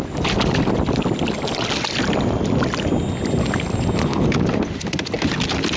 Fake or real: real